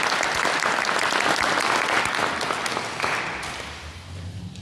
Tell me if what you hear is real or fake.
real